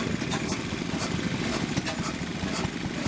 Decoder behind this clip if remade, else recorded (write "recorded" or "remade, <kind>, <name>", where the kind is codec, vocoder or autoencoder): recorded